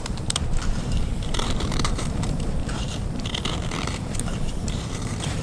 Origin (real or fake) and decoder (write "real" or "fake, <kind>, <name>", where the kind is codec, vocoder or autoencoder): fake, vocoder, BigVGAN v2